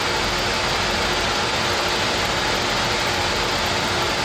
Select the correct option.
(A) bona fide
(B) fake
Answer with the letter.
A